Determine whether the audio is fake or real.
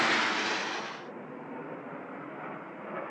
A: real